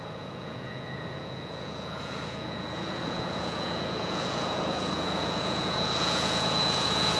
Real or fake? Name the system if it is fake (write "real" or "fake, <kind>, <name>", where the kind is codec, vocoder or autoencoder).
fake, vocoder, Vocos